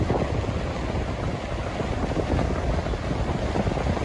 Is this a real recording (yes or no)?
yes